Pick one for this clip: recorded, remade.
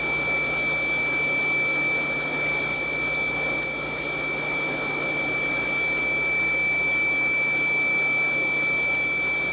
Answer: recorded